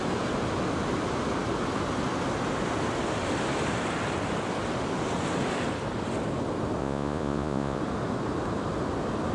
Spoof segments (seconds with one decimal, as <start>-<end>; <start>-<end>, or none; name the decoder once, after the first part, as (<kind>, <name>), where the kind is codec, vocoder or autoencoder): 6.8-7.8 (vocoder, Vocos)